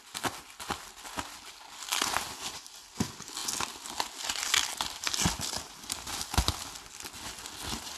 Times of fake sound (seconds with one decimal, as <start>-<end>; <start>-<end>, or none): none